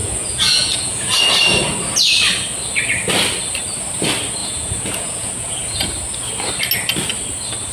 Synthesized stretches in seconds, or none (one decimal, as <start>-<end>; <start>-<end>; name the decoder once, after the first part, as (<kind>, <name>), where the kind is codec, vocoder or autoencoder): 0.0-1.2 (vocoder, Vocos); 4.4-5.9